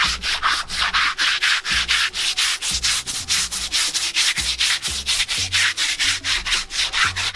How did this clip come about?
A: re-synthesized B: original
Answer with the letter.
B